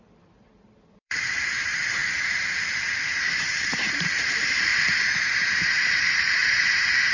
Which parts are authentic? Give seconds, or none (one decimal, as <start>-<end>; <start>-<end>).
2.0-3.1; 4.7-5.6